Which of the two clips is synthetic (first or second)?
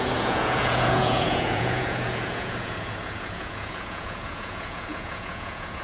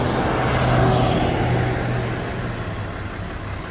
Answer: first